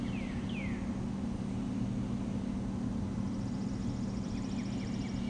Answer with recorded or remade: recorded